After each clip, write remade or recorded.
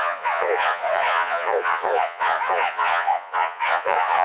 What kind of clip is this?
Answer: remade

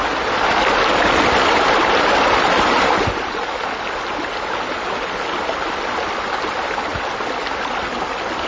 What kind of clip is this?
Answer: recorded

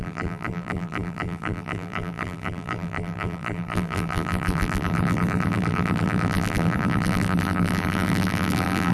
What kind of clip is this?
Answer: remade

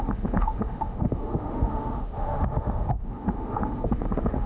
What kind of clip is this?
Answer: remade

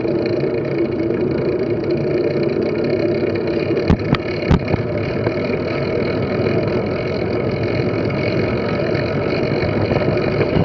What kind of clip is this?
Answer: recorded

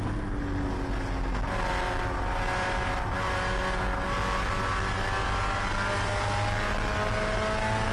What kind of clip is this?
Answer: recorded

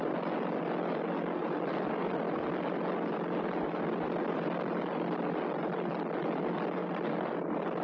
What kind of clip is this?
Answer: recorded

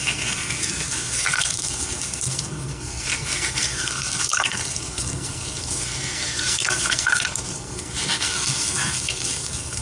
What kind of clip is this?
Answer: remade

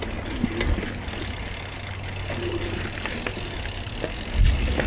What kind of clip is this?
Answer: recorded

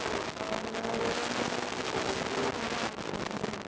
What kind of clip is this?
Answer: recorded